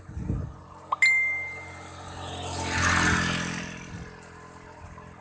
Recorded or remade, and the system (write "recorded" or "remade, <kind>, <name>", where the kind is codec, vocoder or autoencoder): recorded